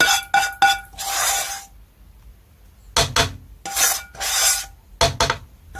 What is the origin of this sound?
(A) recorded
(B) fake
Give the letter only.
A